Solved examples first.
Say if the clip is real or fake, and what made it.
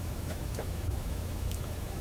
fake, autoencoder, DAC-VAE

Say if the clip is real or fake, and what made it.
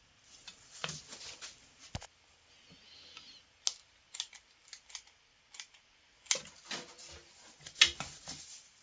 real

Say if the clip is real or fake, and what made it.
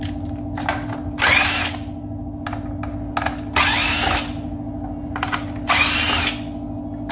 real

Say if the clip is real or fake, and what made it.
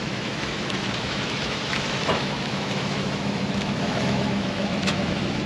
fake, autoencoder, DAC-VAE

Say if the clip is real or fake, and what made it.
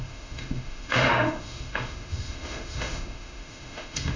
fake, autoencoder, DAC-VAE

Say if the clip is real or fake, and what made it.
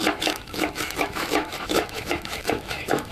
fake, autoencoder, DAC-VAE